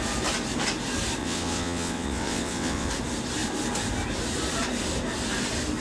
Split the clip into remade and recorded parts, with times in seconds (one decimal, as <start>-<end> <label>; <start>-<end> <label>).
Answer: 0.0-1.2 recorded; 1.2-2.9 remade; 2.9-5.8 recorded